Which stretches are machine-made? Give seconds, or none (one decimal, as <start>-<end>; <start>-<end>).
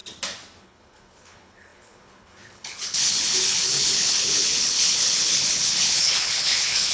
0.6-6.9